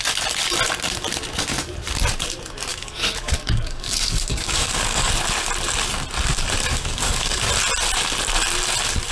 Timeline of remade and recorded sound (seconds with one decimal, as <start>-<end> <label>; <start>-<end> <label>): 0.0-2.7 recorded; 2.7-5.1 remade; 5.1-6.7 recorded; 6.7-7.5 remade; 7.5-9.1 recorded